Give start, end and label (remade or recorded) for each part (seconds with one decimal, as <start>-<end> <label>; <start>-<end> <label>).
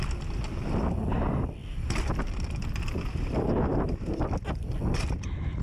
0.0-1.6 recorded; 1.6-5.0 remade; 5.0-5.6 recorded